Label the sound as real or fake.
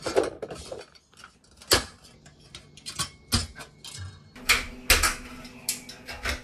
real